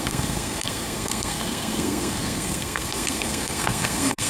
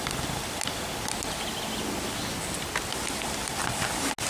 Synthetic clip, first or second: first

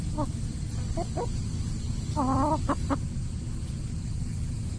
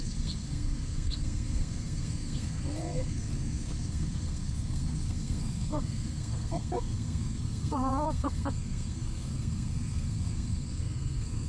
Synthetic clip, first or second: second